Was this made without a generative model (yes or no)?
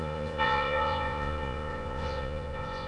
no